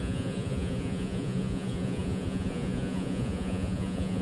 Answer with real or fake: fake